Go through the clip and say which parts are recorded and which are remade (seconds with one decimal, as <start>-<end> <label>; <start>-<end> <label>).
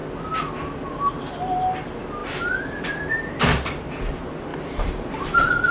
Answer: 0.0-2.2 recorded; 2.2-3.3 remade; 3.3-4.5 recorded; 4.5-5.7 remade